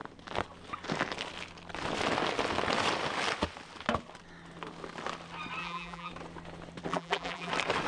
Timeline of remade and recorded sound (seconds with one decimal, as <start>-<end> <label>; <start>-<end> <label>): 0.0-5.6 recorded; 5.6-6.1 remade; 6.1-6.9 recorded; 6.9-7.5 remade; 7.5-7.9 recorded